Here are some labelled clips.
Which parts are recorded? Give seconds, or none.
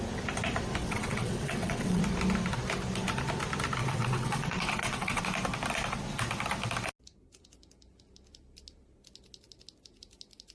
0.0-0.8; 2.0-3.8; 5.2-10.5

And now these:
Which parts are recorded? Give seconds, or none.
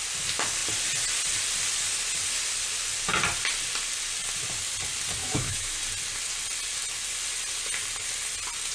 0.0-5.2; 5.8-8.7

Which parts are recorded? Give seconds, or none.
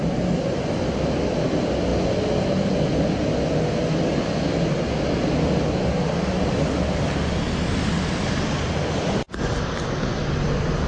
0.0-10.9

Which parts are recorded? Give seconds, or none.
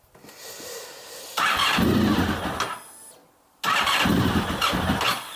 0.0-5.4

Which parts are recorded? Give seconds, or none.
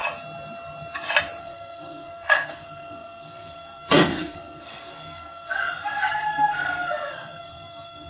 0.0-1.4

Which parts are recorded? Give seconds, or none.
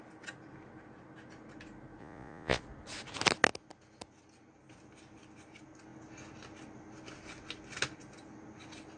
0.0-2.0; 2.6-9.0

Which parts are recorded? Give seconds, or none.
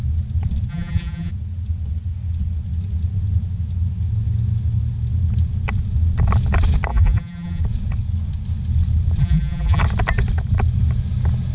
0.0-0.7; 1.3-6.9; 7.6-9.2; 9.8-11.5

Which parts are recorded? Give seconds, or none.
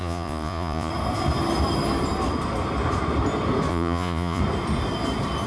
0.9-3.7; 4.4-5.5